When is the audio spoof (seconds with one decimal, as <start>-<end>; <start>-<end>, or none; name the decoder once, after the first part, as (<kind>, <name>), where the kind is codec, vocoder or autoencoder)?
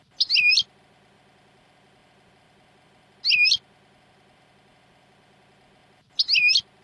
none